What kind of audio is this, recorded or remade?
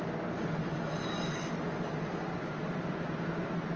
recorded